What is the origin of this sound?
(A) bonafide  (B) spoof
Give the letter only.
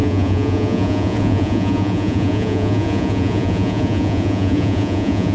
B